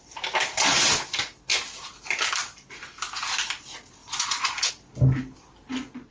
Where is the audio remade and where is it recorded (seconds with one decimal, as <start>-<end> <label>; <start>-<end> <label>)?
0.0-4.0 recorded; 4.0-4.7 remade; 4.7-6.1 recorded